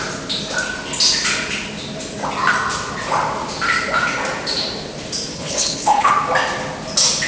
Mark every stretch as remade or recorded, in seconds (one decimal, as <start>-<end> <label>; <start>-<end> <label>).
0.0-5.3 recorded; 5.3-6.1 remade; 6.1-7.3 recorded